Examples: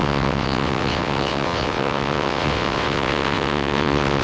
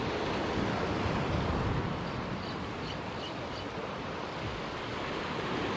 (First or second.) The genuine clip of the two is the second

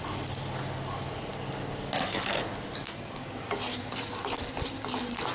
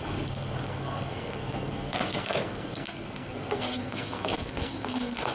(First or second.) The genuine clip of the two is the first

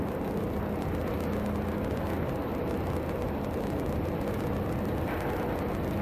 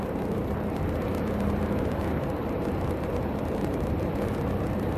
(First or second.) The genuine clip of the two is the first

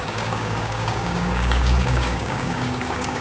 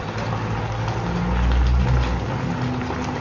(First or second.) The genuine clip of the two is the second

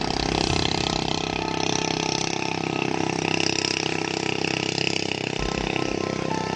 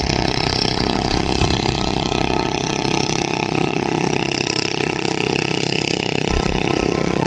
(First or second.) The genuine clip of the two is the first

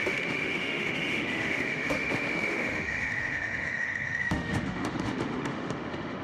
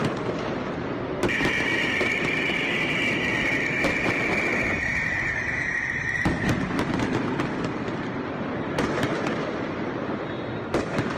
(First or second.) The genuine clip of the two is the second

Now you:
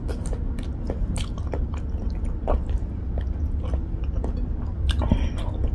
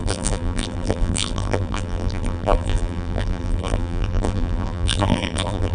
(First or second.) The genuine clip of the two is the first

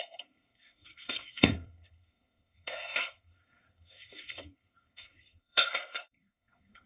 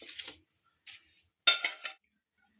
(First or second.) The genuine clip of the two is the second